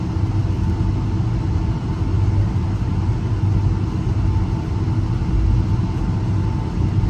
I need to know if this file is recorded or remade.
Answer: recorded